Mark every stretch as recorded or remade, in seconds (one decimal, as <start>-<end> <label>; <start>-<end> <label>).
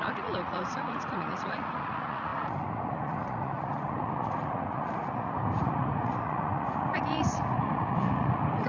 0.0-8.7 remade